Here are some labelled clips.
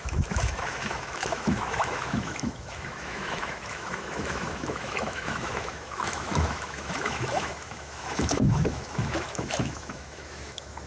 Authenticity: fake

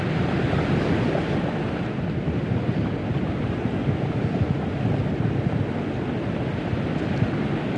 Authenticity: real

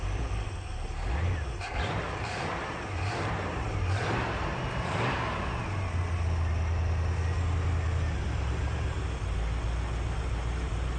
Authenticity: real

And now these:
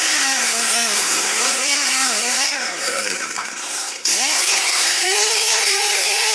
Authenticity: fake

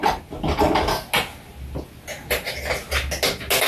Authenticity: real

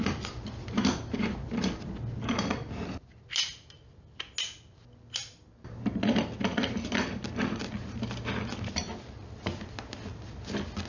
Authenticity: real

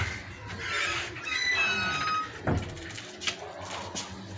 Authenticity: real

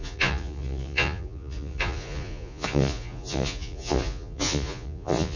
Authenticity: fake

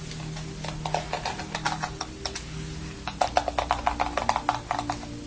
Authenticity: real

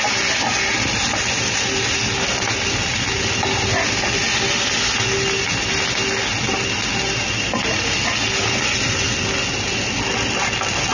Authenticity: real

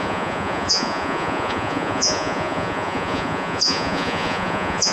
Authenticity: fake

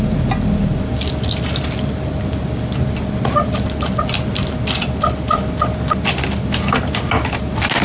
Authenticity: real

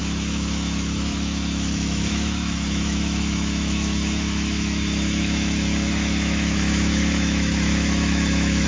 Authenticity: fake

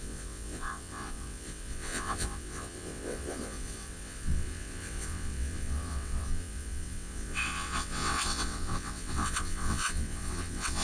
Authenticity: fake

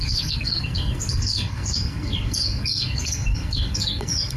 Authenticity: fake